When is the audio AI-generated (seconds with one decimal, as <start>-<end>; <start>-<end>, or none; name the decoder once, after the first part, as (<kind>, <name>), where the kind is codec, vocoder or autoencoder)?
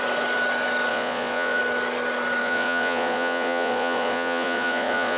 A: 0.9-1.6 (vocoder, Vocos); 2.4-5.2